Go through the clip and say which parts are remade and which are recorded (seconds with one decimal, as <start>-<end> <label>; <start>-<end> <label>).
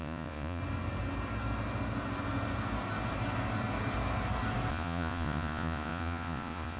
0.0-0.6 remade; 0.6-4.7 recorded; 4.7-6.8 remade